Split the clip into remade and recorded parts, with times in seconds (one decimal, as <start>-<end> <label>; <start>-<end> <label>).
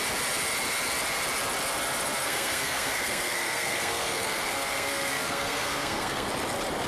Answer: 0.0-2.2 recorded; 2.2-6.3 remade; 6.3-6.9 recorded